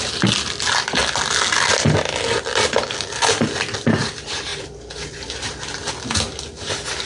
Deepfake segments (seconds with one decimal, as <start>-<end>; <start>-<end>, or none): none